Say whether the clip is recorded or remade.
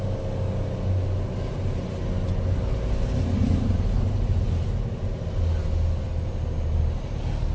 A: recorded